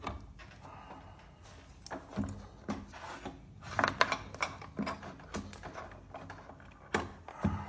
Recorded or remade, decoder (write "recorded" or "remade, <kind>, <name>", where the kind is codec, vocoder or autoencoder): recorded